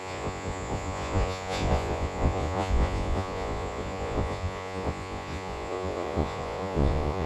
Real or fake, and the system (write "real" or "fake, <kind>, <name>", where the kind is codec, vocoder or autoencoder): fake, vocoder, Vocos